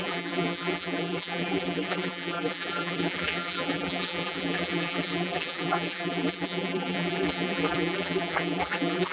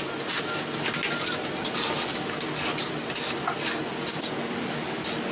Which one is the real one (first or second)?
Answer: second